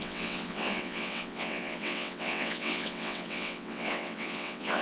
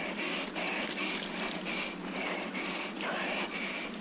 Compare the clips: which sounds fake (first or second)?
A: first